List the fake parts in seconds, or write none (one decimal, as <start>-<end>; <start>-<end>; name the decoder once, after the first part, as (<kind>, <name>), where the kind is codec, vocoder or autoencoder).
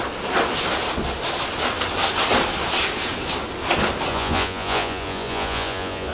4.1-6.1 (vocoder, Vocos)